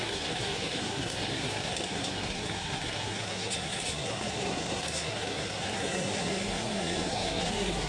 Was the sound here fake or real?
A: fake